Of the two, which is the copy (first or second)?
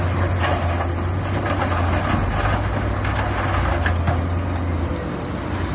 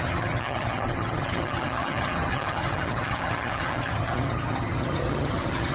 second